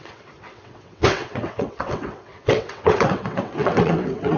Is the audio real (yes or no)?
no